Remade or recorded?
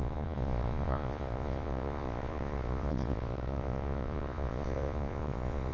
remade